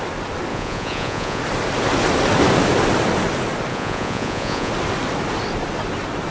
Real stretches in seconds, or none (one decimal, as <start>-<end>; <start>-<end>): 0.0-0.5; 1.4-3.7; 4.7-6.3